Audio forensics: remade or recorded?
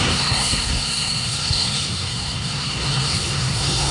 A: remade